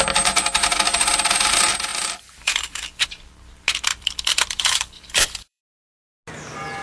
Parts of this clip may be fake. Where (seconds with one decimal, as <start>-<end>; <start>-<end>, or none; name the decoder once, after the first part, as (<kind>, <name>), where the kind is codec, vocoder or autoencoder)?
1.9-2.8 (vocoder, BigVGAN v2); 3.9-5.6